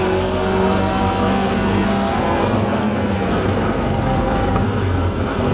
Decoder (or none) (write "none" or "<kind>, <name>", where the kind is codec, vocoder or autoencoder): codec, SNAC